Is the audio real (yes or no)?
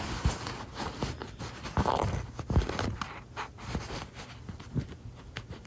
yes